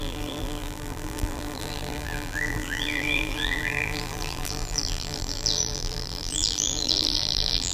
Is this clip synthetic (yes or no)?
yes